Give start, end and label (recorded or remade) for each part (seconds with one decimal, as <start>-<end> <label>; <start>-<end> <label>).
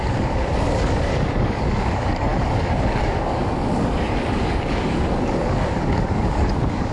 0.0-6.9 remade